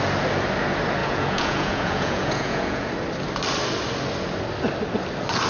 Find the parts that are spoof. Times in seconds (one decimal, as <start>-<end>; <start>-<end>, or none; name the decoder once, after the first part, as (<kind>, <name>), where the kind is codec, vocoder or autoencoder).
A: 1.0-2.9 (vocoder, Vocos)